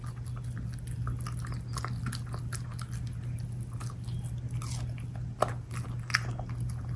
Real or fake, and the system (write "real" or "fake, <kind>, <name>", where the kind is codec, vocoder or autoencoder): real